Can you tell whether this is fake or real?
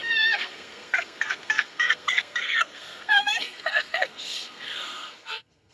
fake